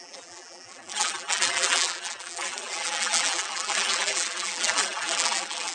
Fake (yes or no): yes